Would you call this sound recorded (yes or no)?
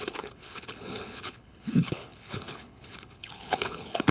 no